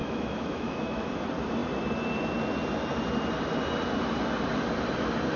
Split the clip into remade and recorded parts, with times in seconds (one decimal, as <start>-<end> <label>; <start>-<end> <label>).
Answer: 0.0-1.1 remade; 1.1-5.4 recorded